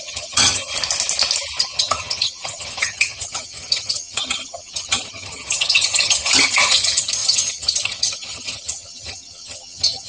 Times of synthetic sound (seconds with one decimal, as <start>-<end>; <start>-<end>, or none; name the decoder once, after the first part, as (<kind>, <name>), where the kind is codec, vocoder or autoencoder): 0.0-0.7 (vocoder, HiFi-GAN); 1.6-10.1